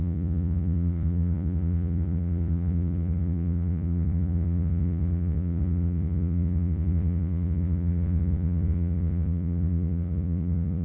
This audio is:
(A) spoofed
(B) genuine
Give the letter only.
A